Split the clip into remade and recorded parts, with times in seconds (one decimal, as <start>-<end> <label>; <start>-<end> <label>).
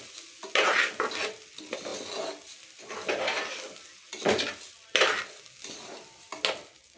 0.0-7.0 recorded